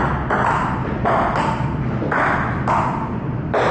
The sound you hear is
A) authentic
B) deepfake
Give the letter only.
A